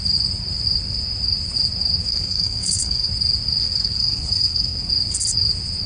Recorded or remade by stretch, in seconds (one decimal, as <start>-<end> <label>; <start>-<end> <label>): 0.0-2.0 recorded; 2.0-3.1 remade; 3.1-3.6 recorded; 3.6-4.9 remade; 4.9-5.9 recorded